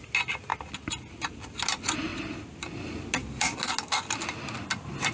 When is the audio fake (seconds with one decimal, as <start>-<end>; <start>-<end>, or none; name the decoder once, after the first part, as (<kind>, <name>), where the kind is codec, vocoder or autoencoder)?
none